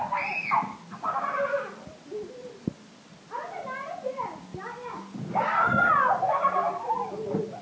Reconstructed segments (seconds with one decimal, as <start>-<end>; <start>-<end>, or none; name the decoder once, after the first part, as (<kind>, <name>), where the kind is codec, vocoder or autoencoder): none

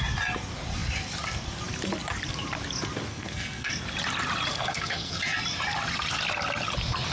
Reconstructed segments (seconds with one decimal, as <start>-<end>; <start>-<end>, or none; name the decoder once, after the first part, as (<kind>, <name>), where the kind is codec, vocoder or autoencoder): 3.1-3.7 (codec, SNAC); 4.5-5.2

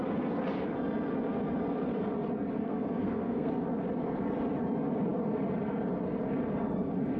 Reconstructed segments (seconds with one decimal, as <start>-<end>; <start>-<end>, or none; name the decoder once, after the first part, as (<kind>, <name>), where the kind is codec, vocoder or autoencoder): 2.6-3.5 (codec, SNAC)

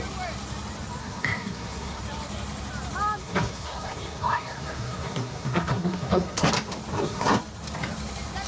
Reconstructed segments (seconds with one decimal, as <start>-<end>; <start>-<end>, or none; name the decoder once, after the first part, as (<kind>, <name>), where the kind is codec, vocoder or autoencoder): 1.0-2.0 (codec, SNAC); 3.2-6.5; 6.9-7.4

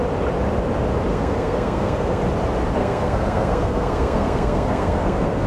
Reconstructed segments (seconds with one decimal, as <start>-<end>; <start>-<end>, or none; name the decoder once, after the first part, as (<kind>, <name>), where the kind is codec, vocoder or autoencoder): 1.1-2.2 (codec, SNAC); 2.8-5.5

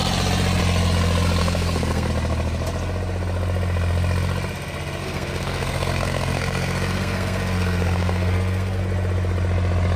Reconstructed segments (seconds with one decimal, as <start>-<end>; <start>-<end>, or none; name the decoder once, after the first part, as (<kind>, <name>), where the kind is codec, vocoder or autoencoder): 1.4-2.1 (codec, SNAC); 5.0-8.8

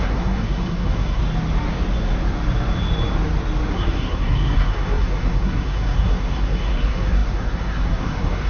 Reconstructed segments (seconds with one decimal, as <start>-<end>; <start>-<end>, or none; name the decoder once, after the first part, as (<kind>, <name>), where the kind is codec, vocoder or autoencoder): 0.0-1.2 (codec, SNAC); 3.7-8.5

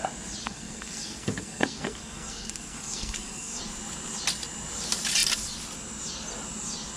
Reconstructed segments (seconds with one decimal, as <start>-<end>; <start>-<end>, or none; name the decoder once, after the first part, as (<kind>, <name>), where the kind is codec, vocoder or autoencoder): 0.4-3.6 (codec, SNAC)